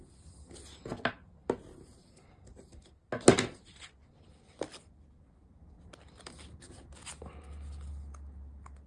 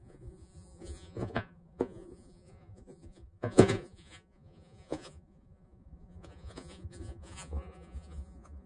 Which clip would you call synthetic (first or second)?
second